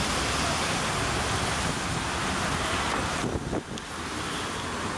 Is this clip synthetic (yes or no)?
no